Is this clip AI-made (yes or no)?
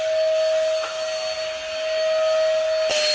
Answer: no